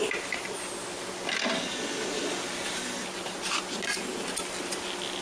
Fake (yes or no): no